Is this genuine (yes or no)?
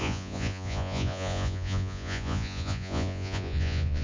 no